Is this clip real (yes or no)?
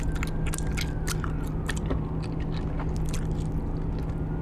yes